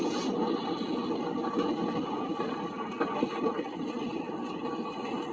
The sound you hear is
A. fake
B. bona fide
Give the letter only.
B